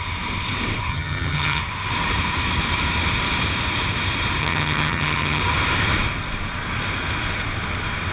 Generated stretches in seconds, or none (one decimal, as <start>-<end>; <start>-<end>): 0.9-1.6; 4.4-5.4